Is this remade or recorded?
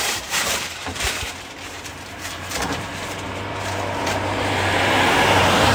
remade